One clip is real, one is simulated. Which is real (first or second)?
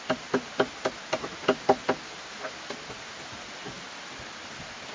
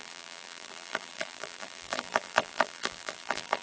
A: first